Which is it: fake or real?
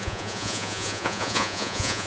fake